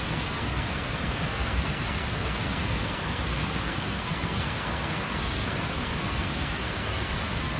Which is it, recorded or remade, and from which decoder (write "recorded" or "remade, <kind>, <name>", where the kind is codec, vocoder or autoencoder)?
remade, codec, SNAC